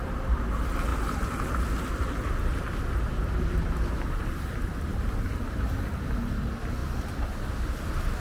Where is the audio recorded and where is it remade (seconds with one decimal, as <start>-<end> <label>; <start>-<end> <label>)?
0.0-4.9 recorded; 4.9-5.9 remade; 5.9-6.8 recorded; 6.8-7.5 remade; 7.5-8.2 recorded